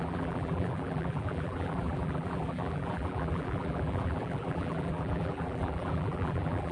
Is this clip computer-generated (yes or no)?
yes